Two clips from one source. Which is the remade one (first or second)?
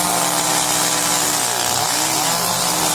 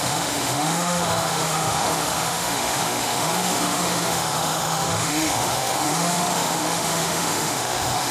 second